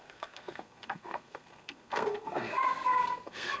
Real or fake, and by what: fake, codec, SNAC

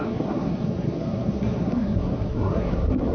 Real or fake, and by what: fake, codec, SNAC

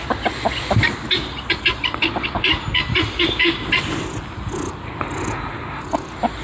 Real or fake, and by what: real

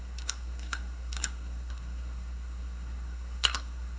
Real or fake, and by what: fake, codec, SNAC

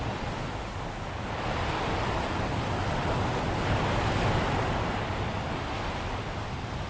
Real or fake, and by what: real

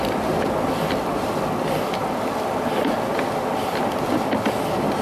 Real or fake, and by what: real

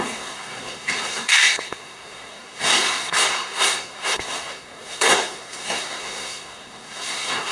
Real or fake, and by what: fake, codec, SNAC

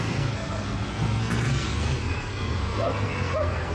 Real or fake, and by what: fake, codec, SNAC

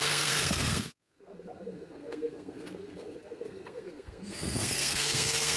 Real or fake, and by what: fake, codec, SNAC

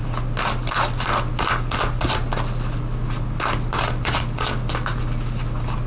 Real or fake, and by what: real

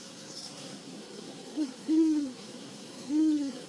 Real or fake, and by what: fake, codec, SNAC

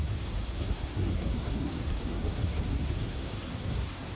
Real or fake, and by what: fake, codec, SNAC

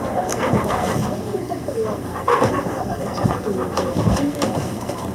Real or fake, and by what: fake, codec, SNAC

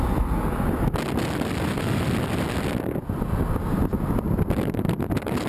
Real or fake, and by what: real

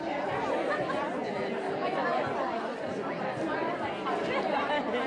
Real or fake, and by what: real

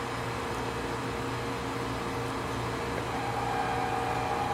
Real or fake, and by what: real